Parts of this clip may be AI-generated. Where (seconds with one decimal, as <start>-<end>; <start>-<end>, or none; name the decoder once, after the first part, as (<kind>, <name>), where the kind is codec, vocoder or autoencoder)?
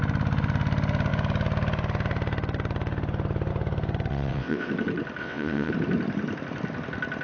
4.1-4.7 (vocoder, WaveNeXt); 5.2-5.7